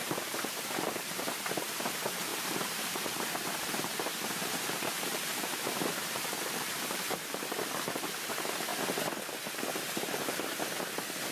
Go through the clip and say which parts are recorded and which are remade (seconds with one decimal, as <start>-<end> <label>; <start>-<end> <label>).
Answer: 0.0-1.9 remade; 1.9-2.3 recorded; 2.3-7.4 remade; 7.4-11.3 recorded